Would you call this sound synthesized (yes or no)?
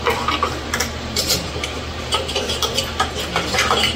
yes